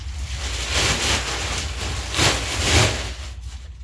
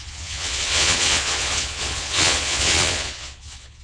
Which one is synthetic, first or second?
second